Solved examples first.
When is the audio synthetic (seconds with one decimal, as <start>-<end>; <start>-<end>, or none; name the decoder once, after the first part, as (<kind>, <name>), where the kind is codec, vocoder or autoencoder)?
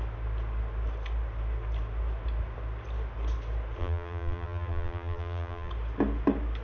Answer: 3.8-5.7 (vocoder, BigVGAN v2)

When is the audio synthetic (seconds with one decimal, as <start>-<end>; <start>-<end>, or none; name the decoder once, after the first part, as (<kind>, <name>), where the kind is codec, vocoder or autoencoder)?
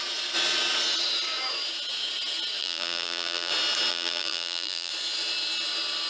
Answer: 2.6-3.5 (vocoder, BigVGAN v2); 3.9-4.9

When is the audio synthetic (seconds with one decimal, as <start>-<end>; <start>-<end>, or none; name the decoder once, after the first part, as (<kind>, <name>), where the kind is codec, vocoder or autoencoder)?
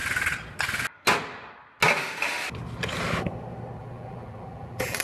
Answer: 3.8-5.0 (vocoder, BigVGAN v2)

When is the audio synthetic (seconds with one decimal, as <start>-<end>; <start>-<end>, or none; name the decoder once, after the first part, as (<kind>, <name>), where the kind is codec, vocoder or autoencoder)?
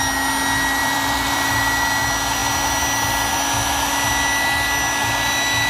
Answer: 0.8-1.5 (vocoder, BigVGAN v2)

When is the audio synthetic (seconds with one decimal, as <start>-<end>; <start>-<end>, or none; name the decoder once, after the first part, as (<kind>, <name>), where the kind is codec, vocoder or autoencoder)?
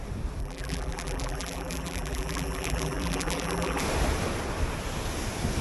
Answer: 0.4-3.8 (vocoder, BigVGAN v2)